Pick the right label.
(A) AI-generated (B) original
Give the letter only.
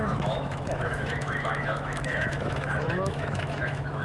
A